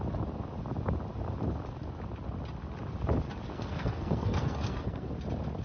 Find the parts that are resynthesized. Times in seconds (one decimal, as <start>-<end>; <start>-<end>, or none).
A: 3.5-5.1